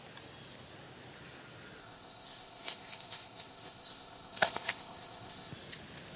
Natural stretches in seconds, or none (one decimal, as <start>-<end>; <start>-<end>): 0.0-1.8; 5.5-6.2